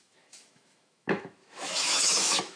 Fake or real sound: fake